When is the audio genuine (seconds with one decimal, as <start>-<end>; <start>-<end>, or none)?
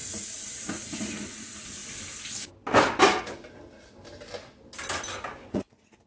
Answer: 0.0-0.7; 1.8-5.5